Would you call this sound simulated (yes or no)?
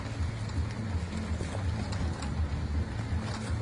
no